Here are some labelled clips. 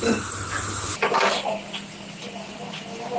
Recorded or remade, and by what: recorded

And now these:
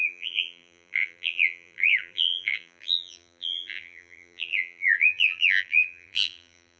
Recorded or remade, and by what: remade, vocoder, BigVGAN v2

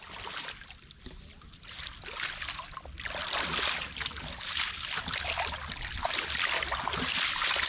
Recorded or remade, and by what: recorded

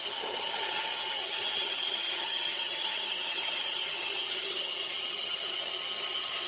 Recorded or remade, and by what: remade, vocoder, HiFi-GAN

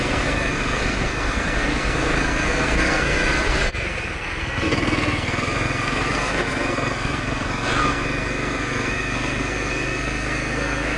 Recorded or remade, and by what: remade, codec, SNAC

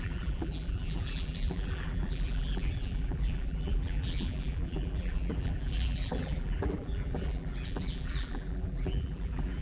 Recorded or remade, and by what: remade, vocoder, BigVGAN v2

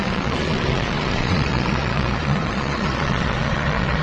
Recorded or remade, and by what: remade, vocoder, Vocos